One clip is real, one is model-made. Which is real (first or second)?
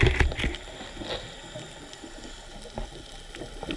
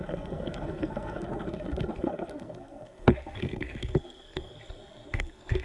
first